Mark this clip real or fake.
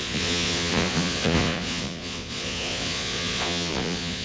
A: fake